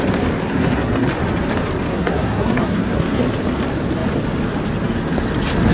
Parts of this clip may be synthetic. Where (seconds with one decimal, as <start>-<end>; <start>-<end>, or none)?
0.4-1.1; 1.9-3.2